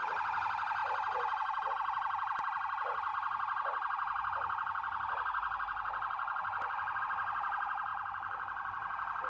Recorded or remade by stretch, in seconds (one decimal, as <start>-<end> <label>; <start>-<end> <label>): 0.0-9.3 recorded

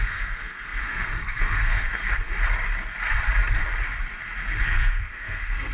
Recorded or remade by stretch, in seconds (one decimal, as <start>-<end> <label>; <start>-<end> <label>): 0.0-2.0 remade; 2.0-4.6 recorded; 4.6-5.7 remade

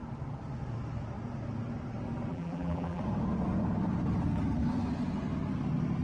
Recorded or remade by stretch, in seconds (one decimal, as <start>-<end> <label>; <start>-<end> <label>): 0.0-2.3 recorded; 2.3-3.0 remade; 3.0-6.0 recorded

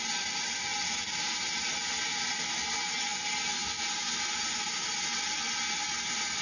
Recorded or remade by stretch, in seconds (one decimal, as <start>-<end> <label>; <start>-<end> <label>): 0.0-6.4 recorded

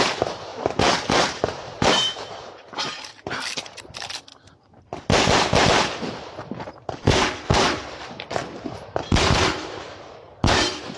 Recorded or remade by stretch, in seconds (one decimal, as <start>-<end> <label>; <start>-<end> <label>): 0.0-4.3 remade; 4.3-6.7 recorded; 6.7-8.4 remade; 8.4-9.0 recorded; 9.0-11.0 remade

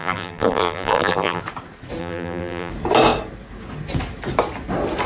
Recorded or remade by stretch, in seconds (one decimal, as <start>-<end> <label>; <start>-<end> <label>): 0.0-1.4 remade; 1.4-2.0 recorded; 2.0-2.7 remade; 2.7-5.1 recorded